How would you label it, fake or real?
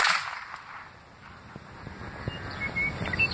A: real